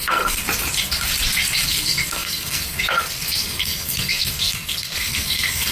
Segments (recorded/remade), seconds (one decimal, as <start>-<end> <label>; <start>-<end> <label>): 0.0-0.4 remade; 0.4-1.7 recorded; 1.7-5.7 remade